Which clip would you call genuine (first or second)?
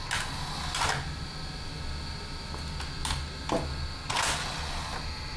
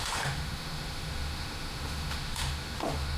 first